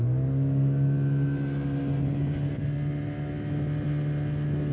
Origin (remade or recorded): recorded